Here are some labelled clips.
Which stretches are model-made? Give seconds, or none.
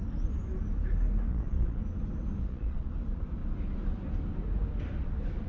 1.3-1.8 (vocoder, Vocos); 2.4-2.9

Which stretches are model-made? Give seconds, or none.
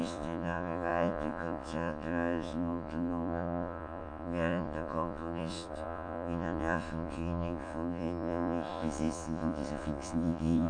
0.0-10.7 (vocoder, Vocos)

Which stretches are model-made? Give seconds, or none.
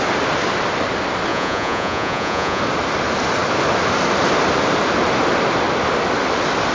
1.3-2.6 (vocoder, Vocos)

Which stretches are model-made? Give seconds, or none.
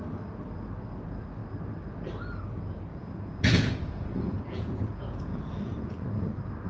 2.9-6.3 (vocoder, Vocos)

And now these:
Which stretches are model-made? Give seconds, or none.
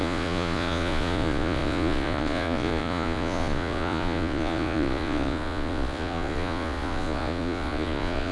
0.0-8.3 (vocoder, Vocos)